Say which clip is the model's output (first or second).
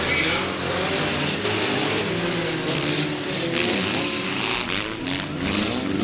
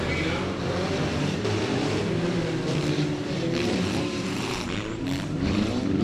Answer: second